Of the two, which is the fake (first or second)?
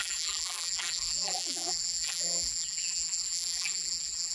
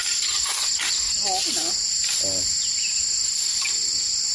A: first